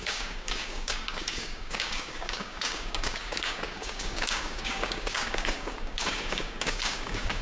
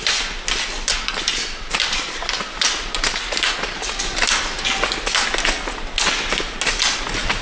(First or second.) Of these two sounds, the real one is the second